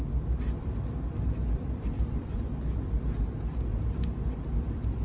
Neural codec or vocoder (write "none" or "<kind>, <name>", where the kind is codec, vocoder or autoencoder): vocoder, BigVGAN v2